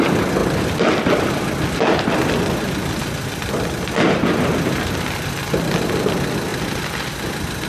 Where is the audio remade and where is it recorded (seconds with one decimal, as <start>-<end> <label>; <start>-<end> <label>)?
0.0-7.7 recorded